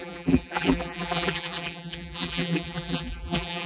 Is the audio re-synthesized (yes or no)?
yes